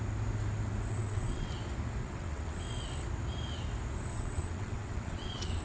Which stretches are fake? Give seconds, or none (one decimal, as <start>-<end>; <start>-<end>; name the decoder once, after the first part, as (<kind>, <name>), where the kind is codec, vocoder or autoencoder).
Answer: 0.9-1.5 (vocoder, WaveNeXt); 2.0-2.6; 4.1-5.6